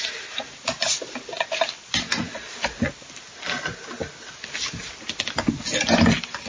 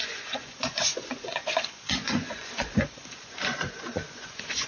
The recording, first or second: first